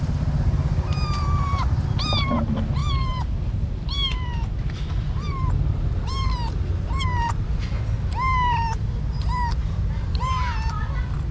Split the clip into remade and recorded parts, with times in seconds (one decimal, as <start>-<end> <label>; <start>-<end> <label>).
0.0-11.3 recorded